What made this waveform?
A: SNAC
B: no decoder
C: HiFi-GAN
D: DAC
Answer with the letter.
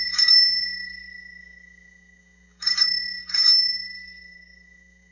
D